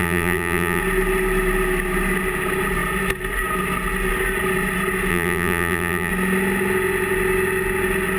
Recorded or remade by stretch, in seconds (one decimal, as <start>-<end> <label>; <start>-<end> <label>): 0.0-0.8 remade; 0.8-5.1 recorded; 5.1-6.1 remade; 6.1-8.2 recorded